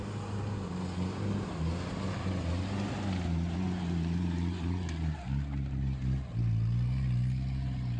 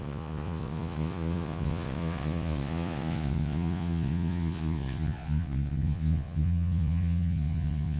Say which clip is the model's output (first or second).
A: second